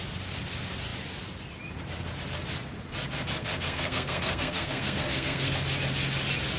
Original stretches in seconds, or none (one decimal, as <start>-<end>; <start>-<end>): 0.0-3.4; 5.5-6.6